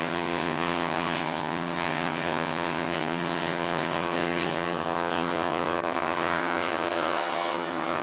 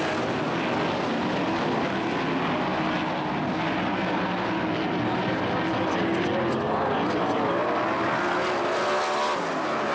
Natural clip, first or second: second